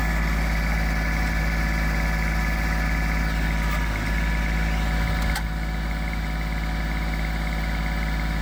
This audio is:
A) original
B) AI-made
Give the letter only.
A